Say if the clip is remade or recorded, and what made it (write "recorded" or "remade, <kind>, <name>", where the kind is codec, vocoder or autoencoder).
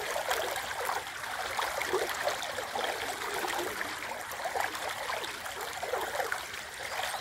remade, vocoder, BigVGAN v2